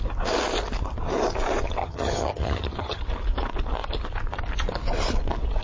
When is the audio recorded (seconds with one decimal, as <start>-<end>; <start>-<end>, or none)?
0.0-1.8; 3.0-5.6